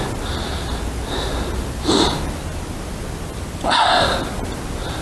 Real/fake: real